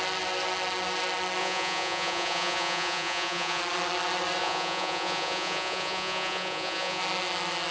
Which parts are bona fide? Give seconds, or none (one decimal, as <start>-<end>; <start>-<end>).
0.0-1.4; 3.6-4.4; 7.0-7.7